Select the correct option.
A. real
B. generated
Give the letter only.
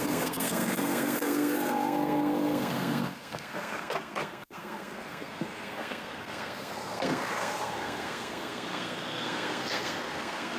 B